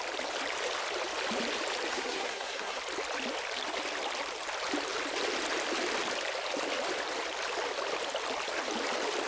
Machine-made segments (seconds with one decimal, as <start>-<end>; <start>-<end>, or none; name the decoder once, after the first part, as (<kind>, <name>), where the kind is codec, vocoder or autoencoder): 1.9-2.8 (codec, SNAC)